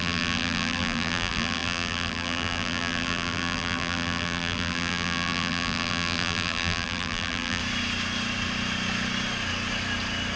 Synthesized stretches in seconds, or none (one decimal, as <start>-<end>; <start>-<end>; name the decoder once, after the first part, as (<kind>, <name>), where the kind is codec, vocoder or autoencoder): 0.0-7.6 (vocoder, BigVGAN v2)